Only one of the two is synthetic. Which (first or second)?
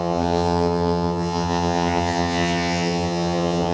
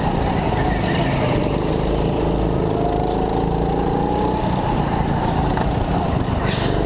first